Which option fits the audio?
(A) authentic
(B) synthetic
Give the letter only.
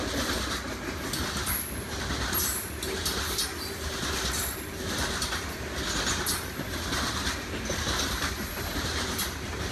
A